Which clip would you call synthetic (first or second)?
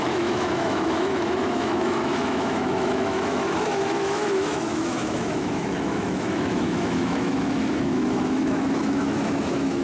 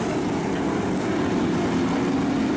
first